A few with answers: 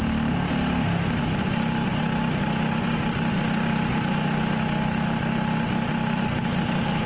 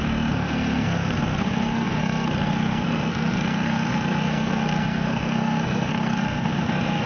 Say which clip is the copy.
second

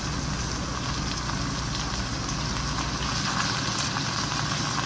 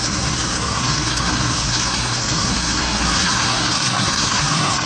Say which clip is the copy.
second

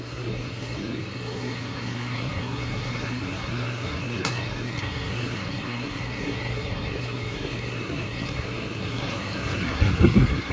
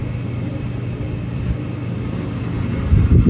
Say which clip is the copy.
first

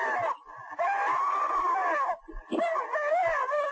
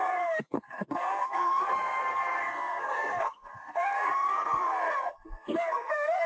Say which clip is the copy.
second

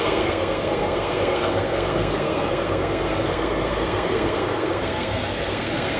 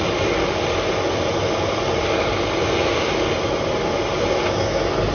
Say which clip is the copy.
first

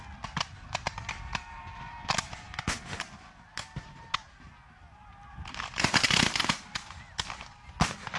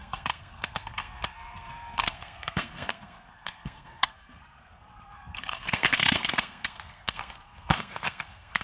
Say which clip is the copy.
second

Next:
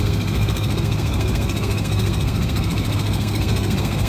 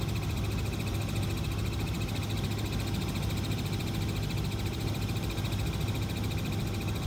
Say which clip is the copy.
first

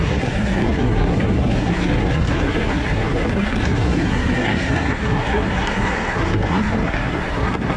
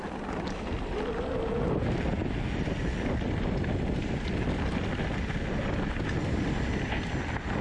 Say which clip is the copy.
first